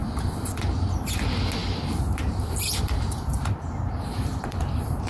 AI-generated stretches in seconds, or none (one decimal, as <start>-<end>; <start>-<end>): 1.6-5.1